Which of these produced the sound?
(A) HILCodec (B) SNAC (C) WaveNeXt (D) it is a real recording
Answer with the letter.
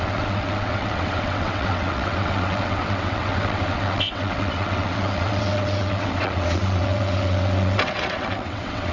C